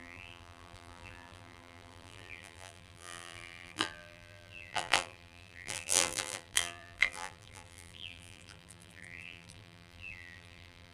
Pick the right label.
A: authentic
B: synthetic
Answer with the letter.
B